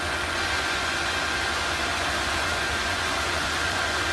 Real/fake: fake